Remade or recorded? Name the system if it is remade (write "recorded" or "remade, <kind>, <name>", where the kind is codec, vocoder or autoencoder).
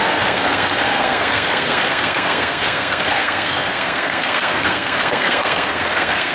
remade, codec, SNAC